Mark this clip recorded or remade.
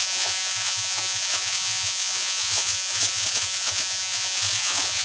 remade